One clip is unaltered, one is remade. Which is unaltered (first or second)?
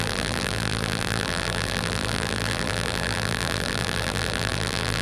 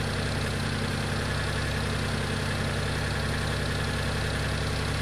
second